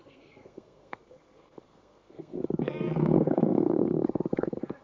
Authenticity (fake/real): fake